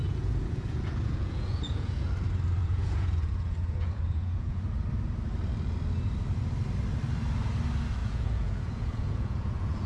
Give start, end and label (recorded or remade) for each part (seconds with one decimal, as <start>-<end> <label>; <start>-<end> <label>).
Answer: 0.0-2.1 remade; 2.1-2.6 recorded; 2.6-4.6 remade; 4.6-8.0 recorded; 8.0-9.9 remade